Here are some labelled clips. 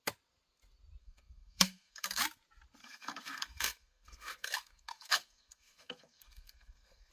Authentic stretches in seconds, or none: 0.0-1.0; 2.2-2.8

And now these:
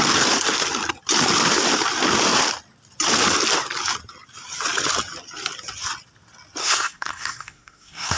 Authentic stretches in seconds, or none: 0.0-6.6

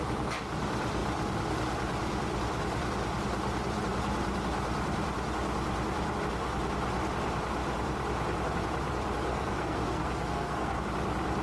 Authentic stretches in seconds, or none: 0.0-9.3; 10.8-11.4